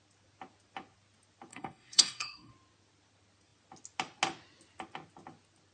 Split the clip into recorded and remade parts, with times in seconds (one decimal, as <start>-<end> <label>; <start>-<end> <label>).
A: 0.0-1.5 recorded; 1.5-2.5 remade; 2.5-5.7 recorded